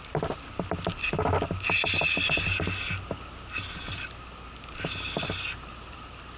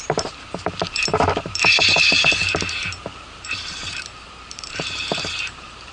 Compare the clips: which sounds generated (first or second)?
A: second